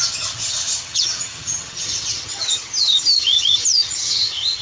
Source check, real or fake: fake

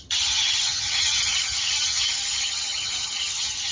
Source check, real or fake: fake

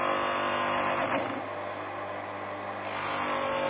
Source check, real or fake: real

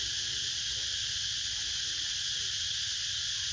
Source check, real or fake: real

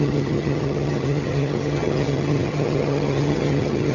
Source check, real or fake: fake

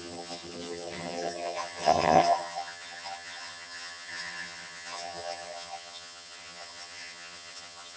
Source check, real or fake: fake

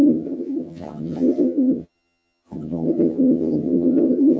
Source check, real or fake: fake